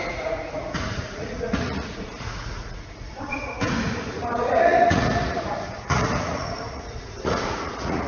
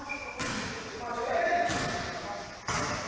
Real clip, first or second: second